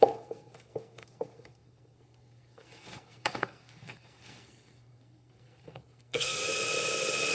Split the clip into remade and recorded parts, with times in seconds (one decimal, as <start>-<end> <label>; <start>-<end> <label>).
0.0-6.4 remade; 6.4-7.3 recorded